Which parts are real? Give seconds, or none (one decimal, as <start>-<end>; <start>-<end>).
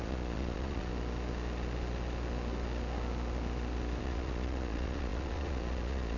0.9-4.0